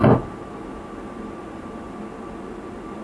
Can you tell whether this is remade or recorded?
recorded